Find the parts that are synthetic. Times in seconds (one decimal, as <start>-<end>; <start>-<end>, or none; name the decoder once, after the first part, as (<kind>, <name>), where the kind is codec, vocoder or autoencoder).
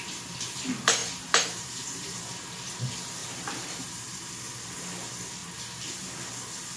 1.0-2.8 (vocoder, BigVGAN v2); 3.2-4.3; 5.4-6.1